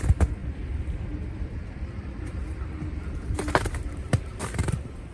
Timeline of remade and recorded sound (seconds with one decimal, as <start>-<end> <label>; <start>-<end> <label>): 0.0-0.4 recorded; 0.4-3.5 remade; 3.5-4.3 recorded; 4.3-5.1 remade